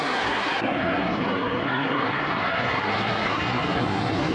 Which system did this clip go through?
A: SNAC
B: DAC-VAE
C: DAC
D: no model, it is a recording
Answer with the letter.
A